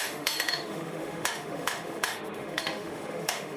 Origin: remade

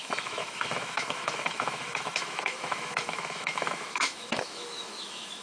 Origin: remade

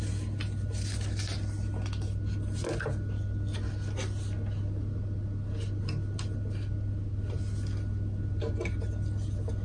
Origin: recorded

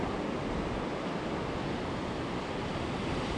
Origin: recorded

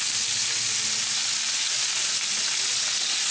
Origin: recorded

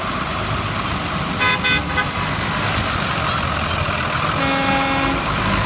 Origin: recorded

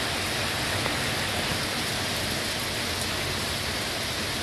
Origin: recorded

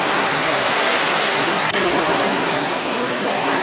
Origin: remade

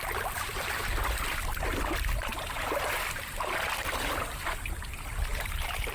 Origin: recorded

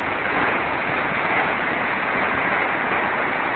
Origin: remade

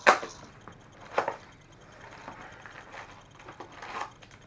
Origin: recorded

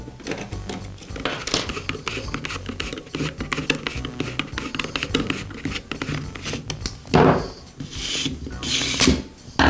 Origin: recorded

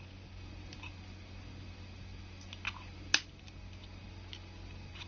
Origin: recorded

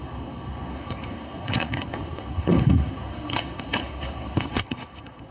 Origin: remade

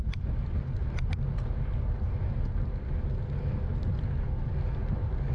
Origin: recorded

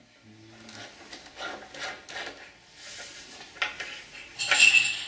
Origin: recorded